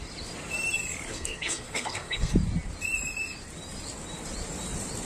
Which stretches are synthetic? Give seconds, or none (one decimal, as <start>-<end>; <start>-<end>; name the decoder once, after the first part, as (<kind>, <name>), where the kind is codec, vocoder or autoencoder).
1.1-2.3 (codec, SNAC)